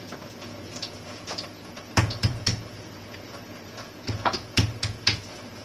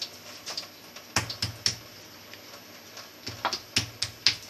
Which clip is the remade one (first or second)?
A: first